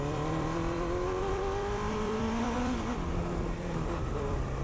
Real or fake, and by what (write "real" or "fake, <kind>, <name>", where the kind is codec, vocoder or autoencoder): fake, vocoder, BigVGAN v2